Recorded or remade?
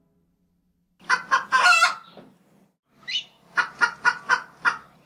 recorded